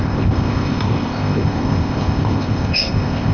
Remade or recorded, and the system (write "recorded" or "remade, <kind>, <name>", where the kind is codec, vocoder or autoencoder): remade, codec, ZipCodec